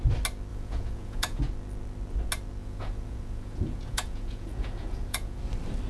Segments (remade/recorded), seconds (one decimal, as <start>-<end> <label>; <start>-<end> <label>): 0.0-0.5 recorded; 0.5-1.4 remade; 1.4-2.6 recorded; 2.6-5.4 remade; 5.4-5.9 recorded